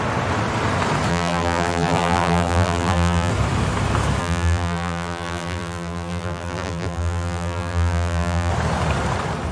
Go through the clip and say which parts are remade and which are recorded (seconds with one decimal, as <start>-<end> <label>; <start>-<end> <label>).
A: 0.0-1.1 recorded; 1.1-3.3 remade; 3.3-4.2 recorded; 4.2-8.5 remade; 8.5-9.5 recorded